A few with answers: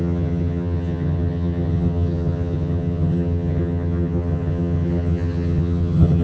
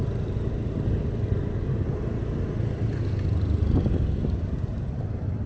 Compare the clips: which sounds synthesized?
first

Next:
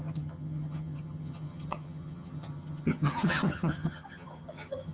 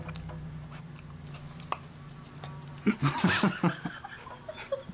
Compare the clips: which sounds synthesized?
first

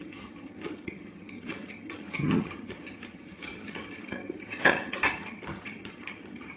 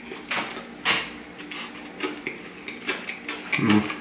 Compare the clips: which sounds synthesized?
first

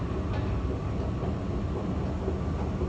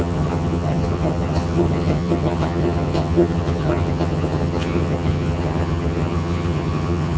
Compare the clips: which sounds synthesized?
second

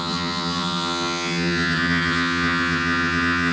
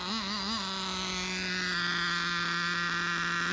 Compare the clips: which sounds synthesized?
first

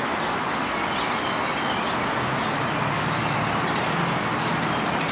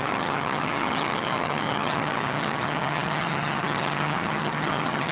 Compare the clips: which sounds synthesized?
second